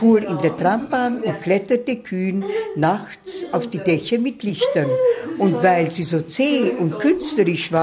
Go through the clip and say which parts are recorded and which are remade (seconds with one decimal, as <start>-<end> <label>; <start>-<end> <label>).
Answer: 0.0-3.0 recorded; 3.0-4.5 remade; 4.5-7.8 recorded